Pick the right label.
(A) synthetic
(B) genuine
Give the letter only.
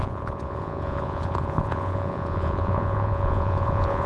A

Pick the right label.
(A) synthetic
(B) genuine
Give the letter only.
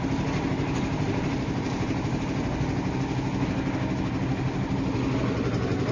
B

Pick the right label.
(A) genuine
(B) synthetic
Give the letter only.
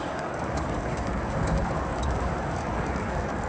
B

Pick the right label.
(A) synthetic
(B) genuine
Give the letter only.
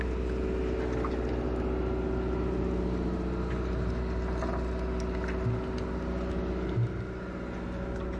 B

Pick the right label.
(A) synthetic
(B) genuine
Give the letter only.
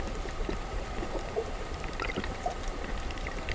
A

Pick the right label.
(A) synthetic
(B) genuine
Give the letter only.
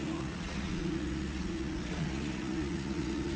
A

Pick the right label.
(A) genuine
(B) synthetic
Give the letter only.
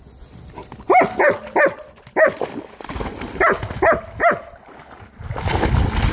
A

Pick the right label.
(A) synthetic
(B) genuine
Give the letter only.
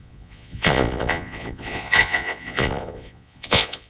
A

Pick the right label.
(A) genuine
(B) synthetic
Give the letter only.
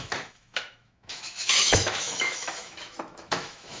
B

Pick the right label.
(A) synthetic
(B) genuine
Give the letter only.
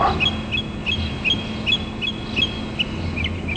B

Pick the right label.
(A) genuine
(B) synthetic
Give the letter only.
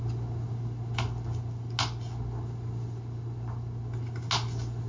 A